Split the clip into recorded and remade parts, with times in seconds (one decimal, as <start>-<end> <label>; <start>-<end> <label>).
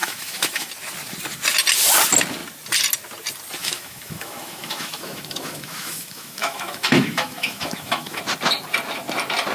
0.0-0.7 remade; 0.7-3.6 recorded; 3.6-8.2 remade; 8.2-9.5 recorded